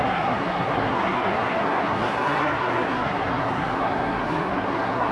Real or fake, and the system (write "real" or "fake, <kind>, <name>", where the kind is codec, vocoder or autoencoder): fake, codec, SNAC